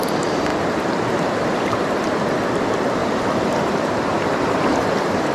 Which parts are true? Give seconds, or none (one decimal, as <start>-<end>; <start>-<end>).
none